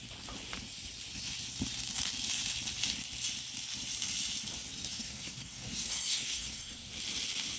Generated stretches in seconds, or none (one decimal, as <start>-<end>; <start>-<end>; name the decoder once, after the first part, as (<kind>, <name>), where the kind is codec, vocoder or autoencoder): 4.9-6.9 (codec, SNAC)